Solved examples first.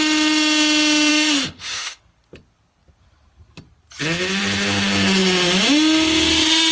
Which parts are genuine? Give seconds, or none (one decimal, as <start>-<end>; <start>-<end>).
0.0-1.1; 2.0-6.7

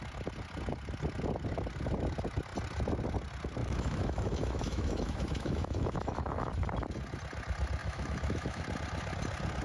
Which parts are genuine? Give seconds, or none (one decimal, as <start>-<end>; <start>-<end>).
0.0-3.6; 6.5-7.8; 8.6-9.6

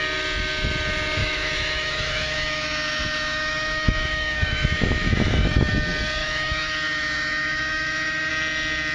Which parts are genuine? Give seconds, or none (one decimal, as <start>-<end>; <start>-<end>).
0.0-1.2; 5.7-6.2; 8.3-8.9